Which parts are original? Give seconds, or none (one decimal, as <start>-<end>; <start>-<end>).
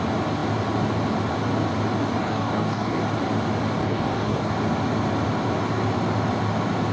0.0-2.2; 3.0-3.8; 4.5-6.9